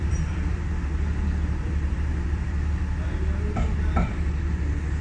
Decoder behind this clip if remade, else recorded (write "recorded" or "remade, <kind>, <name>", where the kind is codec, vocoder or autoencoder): remade, vocoder, BigVGAN v2